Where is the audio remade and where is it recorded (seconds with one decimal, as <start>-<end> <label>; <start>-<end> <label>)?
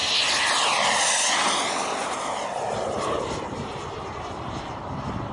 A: 0.0-3.2 recorded; 3.2-5.3 remade